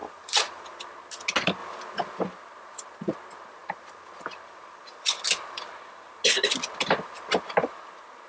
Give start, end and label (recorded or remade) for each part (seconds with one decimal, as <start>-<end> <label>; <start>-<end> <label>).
0.0-0.8 remade; 0.8-3.6 recorded; 3.6-5.7 remade; 5.7-8.3 recorded